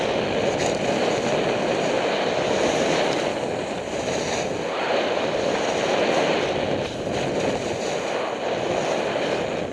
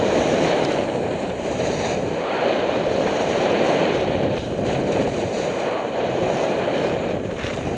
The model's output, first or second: second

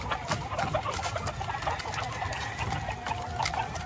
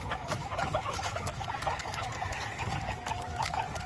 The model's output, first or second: second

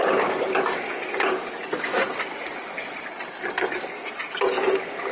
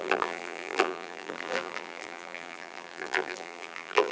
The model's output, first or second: second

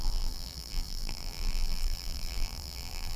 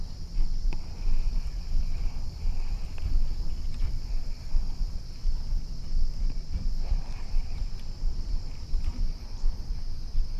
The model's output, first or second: first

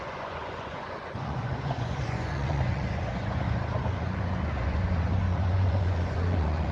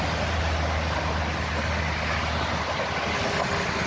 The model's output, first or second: first